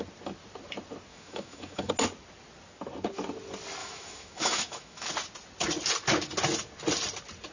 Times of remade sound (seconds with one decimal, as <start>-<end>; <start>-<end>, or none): 1.1-1.9; 3.8-5.1